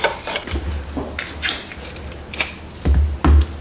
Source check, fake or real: real